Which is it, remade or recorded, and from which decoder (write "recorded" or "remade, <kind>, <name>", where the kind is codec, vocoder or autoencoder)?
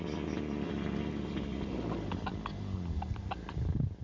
recorded